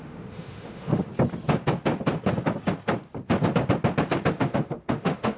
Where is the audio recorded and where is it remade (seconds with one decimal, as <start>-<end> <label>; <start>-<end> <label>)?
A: 0.0-1.1 remade; 1.1-4.3 recorded; 4.3-5.4 remade